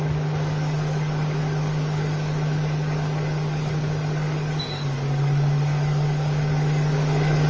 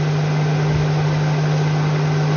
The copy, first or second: first